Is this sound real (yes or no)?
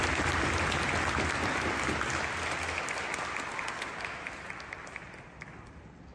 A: yes